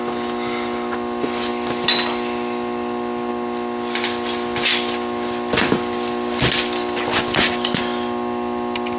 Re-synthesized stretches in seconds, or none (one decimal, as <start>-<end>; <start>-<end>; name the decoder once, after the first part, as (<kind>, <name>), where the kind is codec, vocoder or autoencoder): none